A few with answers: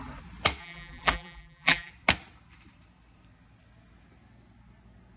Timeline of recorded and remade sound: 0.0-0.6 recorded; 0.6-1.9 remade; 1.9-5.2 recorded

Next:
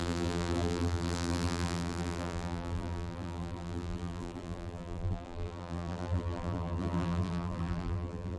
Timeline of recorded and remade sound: 0.0-8.4 remade